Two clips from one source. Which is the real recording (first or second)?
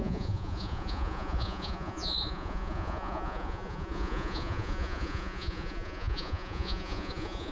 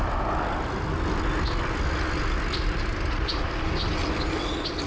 second